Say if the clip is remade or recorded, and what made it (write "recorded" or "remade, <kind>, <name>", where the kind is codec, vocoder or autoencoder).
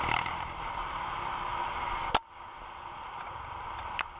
recorded